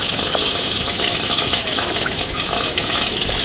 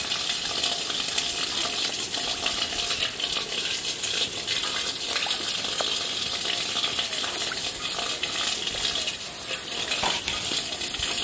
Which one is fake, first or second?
first